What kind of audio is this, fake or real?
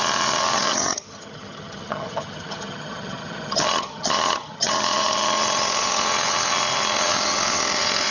fake